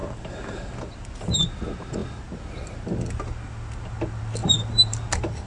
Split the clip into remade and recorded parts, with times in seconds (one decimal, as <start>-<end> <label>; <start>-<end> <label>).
0.0-0.7 remade; 0.7-4.4 recorded; 4.4-5.0 remade; 5.0-5.5 recorded